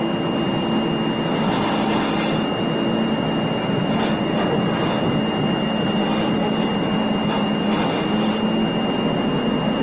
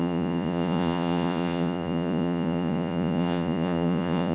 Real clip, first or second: first